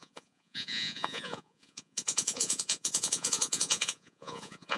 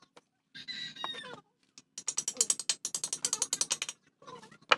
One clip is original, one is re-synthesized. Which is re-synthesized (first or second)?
first